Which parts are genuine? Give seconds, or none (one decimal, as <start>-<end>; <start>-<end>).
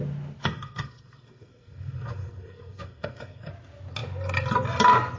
0.0-0.4; 3.5-5.2